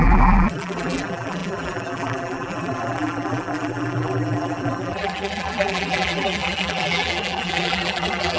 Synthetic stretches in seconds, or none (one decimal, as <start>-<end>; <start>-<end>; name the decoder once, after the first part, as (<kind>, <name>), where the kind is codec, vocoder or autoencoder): 0.0-8.4 (vocoder, BigVGAN v2)